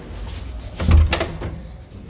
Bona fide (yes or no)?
yes